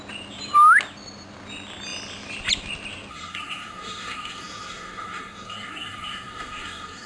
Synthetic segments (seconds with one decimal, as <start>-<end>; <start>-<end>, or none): 3.1-7.1